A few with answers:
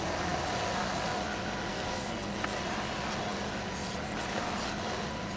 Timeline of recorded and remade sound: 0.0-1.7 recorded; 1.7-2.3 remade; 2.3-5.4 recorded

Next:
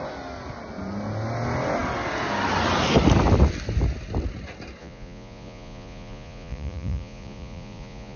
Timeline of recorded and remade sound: 0.0-4.8 recorded; 4.8-8.2 remade

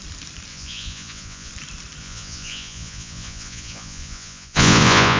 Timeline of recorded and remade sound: 0.0-0.5 recorded; 0.5-1.5 remade; 1.5-2.0 recorded; 2.0-5.2 remade

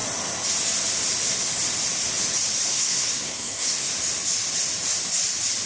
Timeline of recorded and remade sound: 0.0-2.7 recorded; 2.7-3.9 remade; 3.9-5.7 recorded

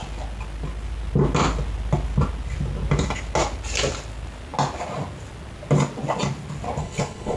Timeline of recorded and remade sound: 0.0-6.8 recorded; 6.8-7.4 remade

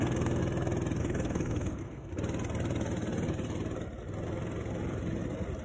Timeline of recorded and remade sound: 0.0-0.4 remade; 0.4-1.0 recorded; 1.0-2.1 remade; 2.1-5.6 recorded

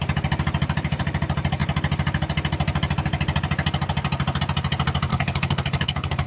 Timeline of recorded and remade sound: 0.0-5.1 recorded; 5.1-6.3 remade

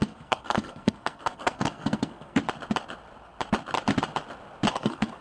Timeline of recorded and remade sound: 0.0-2.4 remade; 2.4-4.7 recorded; 4.7-5.2 remade